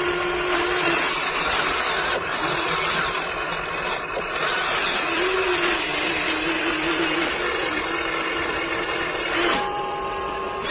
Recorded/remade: recorded